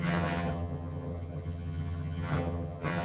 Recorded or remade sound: remade